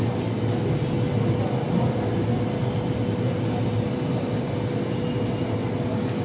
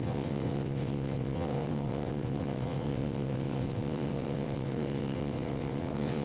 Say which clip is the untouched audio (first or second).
first